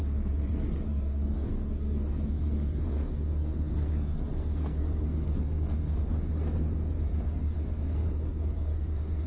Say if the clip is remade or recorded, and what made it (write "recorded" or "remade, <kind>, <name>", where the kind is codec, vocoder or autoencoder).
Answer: remade, codec, SNAC